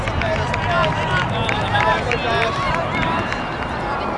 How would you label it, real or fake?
real